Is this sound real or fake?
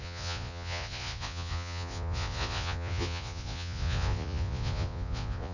fake